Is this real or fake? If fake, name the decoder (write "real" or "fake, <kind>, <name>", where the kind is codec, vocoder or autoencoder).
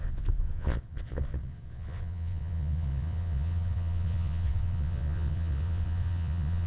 fake, vocoder, Vocos